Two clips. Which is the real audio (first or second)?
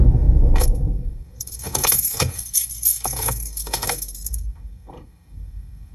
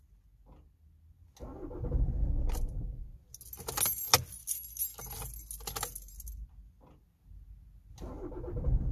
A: second